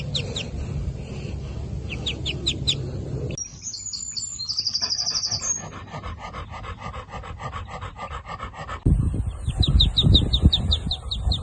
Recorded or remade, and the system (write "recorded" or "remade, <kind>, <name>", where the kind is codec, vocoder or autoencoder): recorded